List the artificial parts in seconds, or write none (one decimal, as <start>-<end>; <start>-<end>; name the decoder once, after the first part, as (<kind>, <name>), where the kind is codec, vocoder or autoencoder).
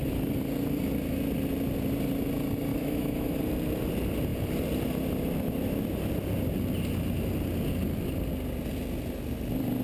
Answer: 2.7-3.4 (autoencoder, DAC-VAE)